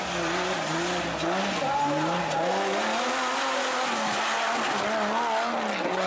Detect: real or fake real